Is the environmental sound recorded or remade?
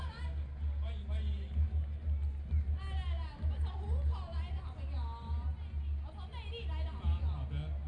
recorded